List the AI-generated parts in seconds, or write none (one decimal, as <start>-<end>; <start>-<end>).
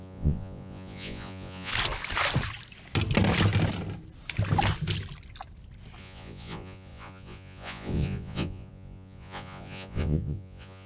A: 0.0-1.7; 6.0-10.9